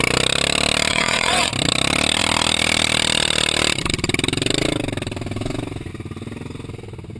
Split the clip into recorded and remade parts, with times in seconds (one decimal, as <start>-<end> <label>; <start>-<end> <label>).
0.0-0.9 recorded; 0.9-1.5 remade; 1.5-7.2 recorded